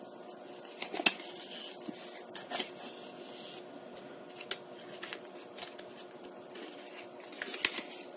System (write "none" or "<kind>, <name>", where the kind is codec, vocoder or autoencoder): none